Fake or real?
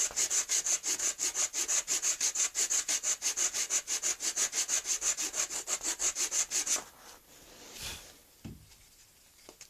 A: real